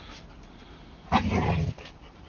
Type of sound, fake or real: real